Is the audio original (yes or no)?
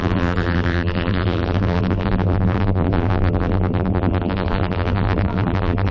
no